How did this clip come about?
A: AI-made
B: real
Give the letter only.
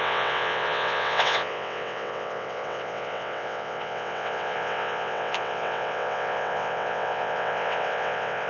A